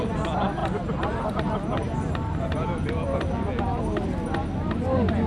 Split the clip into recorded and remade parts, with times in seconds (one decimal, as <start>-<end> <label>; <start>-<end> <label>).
0.0-5.3 recorded